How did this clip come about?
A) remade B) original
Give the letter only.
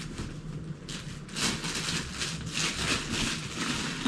B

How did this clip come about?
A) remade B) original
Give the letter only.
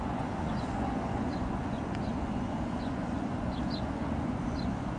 A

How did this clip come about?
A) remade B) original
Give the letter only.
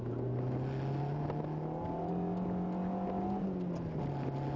B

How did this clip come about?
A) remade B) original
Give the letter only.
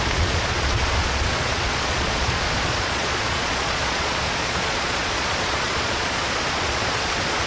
A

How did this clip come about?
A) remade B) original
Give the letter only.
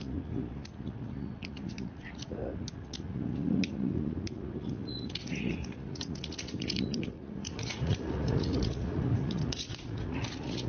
A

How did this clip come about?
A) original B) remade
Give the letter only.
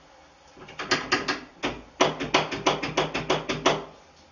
A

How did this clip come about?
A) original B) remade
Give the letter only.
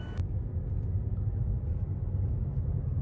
A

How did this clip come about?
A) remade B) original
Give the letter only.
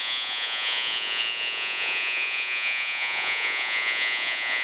A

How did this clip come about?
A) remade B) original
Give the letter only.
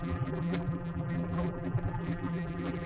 A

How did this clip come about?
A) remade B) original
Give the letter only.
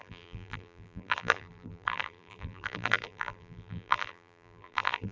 A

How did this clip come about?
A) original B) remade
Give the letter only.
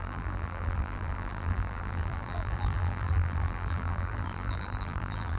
B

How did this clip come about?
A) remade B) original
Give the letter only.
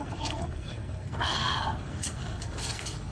A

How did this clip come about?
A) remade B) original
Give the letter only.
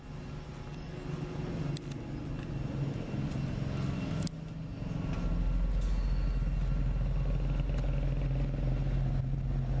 B